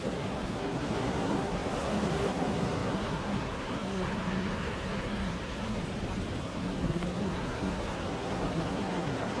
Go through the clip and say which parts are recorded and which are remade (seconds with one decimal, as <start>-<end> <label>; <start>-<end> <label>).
0.0-5.8 remade; 5.8-6.4 recorded; 6.4-9.4 remade